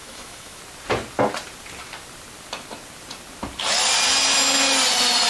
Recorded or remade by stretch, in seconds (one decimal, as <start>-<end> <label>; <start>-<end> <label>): 0.0-0.6 remade; 0.6-5.3 recorded